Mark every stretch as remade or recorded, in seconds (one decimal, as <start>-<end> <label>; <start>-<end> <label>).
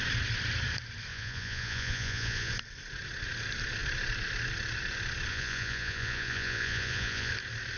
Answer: 0.0-1.1 recorded; 1.1-2.5 remade; 2.5-5.3 recorded; 5.3-7.3 remade; 7.3-7.8 recorded